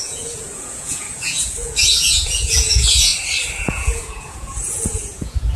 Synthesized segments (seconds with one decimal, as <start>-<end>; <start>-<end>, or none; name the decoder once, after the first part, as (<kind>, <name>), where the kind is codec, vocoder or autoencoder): 0.0-3.1 (vocoder, Vocos); 3.6-5.6